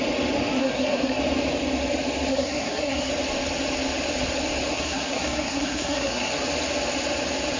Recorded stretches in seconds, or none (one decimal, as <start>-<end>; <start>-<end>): 0.0-0.6; 1.2-2.3; 3.1-4.7; 6.3-7.6